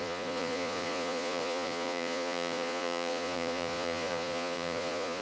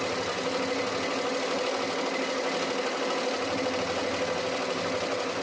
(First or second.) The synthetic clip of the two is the first